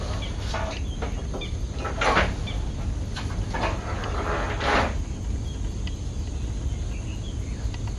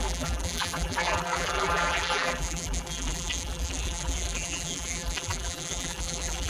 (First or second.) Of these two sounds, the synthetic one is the second